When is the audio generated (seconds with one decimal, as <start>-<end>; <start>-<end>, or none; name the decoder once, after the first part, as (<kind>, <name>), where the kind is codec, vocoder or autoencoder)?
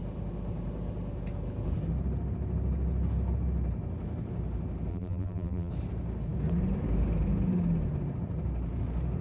4.9-5.7 (vocoder, BigVGAN v2)